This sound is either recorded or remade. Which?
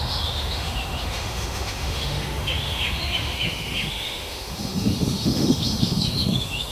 remade